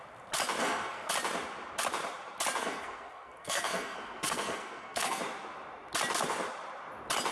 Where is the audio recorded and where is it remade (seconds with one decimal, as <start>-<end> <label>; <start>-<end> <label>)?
0.0-0.6 recorded; 0.6-1.1 remade; 1.1-2.6 recorded; 2.6-5.2 remade; 5.2-7.3 recorded